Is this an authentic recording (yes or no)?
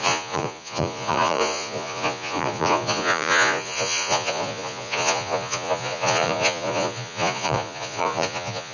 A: no